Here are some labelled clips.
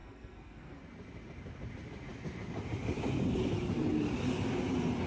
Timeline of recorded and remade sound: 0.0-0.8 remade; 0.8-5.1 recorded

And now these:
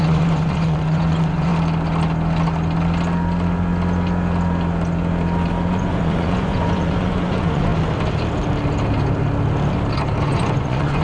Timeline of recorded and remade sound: 0.0-1.5 remade; 1.5-5.7 recorded; 5.7-7.7 remade; 7.7-10.2 recorded; 10.2-11.0 remade

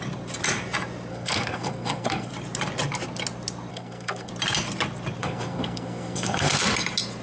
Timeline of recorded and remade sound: 0.0-1.1 recorded; 1.1-2.3 remade; 2.3-3.7 recorded; 3.7-4.3 remade; 4.3-5.2 recorded; 5.2-6.5 remade; 6.5-7.2 recorded

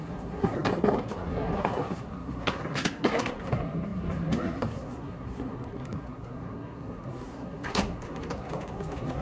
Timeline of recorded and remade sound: 0.0-9.2 remade

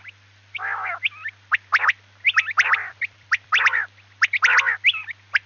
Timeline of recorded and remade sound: 0.0-2.8 recorded; 2.8-3.6 remade; 3.6-5.5 recorded

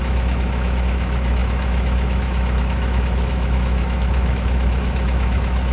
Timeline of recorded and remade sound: 0.0-5.7 remade

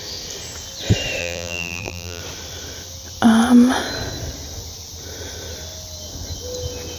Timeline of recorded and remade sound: 0.0-1.2 recorded; 1.2-2.2 remade; 2.2-7.0 recorded

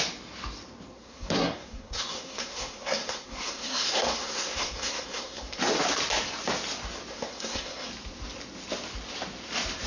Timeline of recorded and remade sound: 0.0-0.9 recorded; 0.9-5.6 remade; 5.6-7.1 recorded; 7.1-7.9 remade; 7.9-9.9 recorded